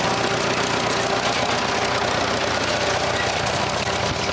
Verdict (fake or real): real